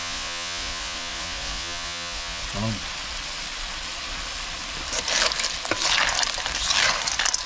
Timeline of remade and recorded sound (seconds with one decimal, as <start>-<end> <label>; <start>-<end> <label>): 0.0-2.4 remade; 2.4-7.5 recorded